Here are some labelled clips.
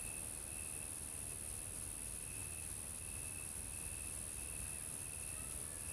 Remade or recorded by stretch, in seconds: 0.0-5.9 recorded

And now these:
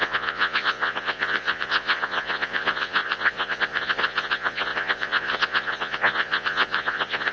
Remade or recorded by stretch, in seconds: 0.0-7.3 remade

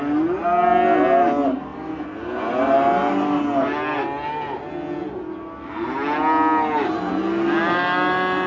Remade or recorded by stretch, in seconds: 0.0-8.5 recorded

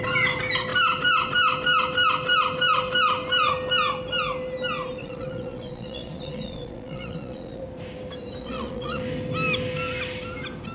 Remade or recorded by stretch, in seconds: 0.0-5.0 recorded; 5.0-7.6 remade; 7.6-8.4 recorded; 8.4-9.0 remade; 9.0-10.7 recorded

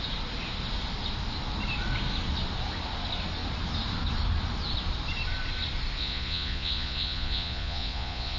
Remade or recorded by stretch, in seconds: 0.0-6.0 recorded; 6.0-8.4 remade